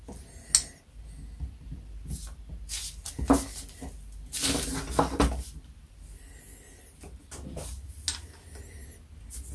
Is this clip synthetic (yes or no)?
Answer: no